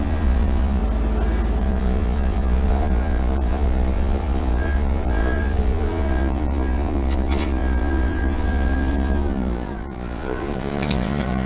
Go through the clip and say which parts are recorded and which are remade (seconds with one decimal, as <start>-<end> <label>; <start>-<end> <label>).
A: 0.0-0.8 remade; 0.8-1.6 recorded; 1.6-11.5 remade